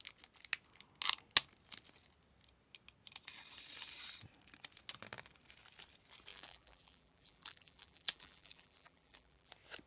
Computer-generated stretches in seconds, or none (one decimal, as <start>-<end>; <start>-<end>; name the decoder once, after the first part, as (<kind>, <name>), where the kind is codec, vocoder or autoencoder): 6.3-9.5 (vocoder, BigVGAN v2)